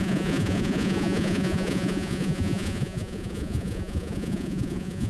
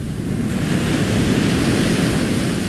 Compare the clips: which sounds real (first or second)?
second